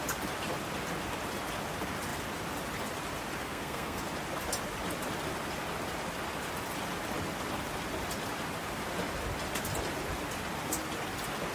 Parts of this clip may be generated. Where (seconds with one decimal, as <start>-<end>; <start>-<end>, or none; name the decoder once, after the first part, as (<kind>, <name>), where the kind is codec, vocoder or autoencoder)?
3.4-4.0 (codec, SNAC)